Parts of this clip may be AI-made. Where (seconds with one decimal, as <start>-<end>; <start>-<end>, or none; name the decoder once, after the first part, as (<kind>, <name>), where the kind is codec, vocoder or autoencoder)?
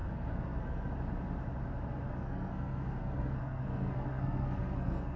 0.0-0.9 (codec, SNAC); 2.1-5.2